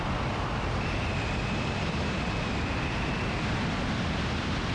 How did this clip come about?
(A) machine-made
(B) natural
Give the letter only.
A